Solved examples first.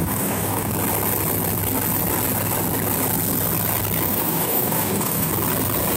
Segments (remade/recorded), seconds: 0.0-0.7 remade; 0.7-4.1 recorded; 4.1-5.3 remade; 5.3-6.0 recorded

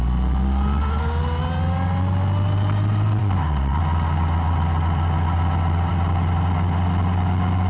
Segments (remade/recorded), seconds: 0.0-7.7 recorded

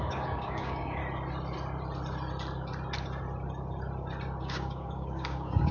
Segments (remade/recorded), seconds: 0.0-1.0 remade; 1.0-4.4 recorded; 4.4-5.7 remade

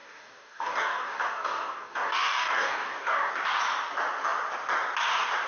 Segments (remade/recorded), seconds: 0.0-3.3 remade; 3.3-5.5 recorded

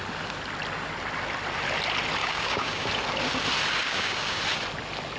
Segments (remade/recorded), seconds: 0.0-2.2 recorded; 2.2-2.9 remade; 2.9-3.8 recorded; 3.8-4.4 remade; 4.4-5.2 recorded